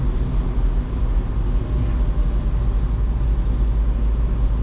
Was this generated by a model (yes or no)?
no